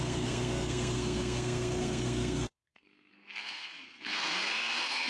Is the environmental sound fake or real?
fake